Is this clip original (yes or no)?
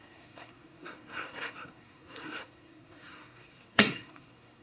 no